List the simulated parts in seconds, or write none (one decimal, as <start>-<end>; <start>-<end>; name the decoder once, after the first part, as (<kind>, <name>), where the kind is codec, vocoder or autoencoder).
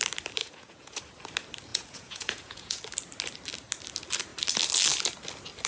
0.4-1.0 (vocoder, Vocos); 1.7-2.8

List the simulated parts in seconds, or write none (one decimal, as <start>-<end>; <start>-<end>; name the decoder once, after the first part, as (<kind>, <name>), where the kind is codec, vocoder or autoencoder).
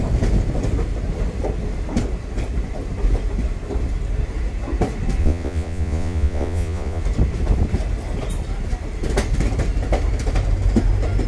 5.2-7.0 (vocoder, Vocos)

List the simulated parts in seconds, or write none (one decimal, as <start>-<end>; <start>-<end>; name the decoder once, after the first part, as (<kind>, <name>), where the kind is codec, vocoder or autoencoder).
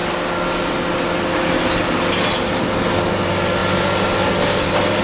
none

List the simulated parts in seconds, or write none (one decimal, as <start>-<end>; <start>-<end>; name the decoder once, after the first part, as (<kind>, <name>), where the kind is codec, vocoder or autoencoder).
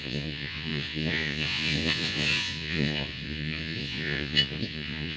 0.0-5.2 (vocoder, Vocos)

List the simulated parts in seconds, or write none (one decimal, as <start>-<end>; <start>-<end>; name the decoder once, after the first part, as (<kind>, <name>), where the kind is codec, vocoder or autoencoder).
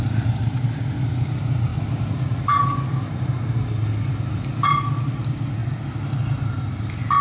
none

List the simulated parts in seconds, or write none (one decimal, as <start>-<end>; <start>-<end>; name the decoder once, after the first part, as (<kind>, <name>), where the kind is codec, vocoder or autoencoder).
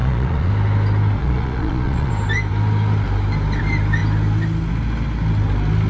0.0-0.5 (vocoder, Vocos); 1.2-2.1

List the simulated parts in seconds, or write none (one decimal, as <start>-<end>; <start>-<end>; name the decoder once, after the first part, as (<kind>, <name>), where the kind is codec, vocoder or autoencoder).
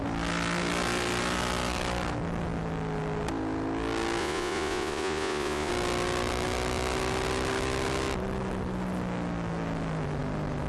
4.2-5.7 (vocoder, Vocos)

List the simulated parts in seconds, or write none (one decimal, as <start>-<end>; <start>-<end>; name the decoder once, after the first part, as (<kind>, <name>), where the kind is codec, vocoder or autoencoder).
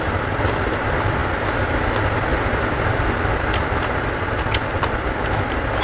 none